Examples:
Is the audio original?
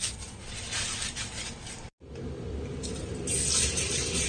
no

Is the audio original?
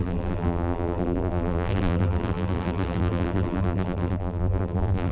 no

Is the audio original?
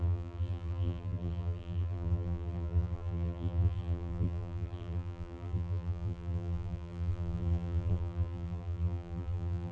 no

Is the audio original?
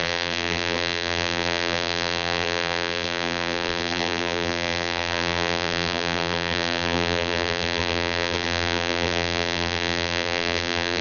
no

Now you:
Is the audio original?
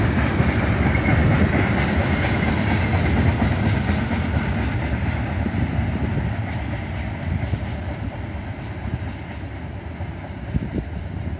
yes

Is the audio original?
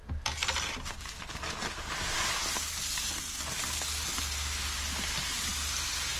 yes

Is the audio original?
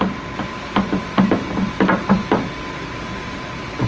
yes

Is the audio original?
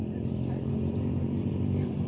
no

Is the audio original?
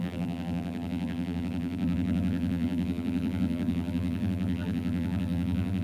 no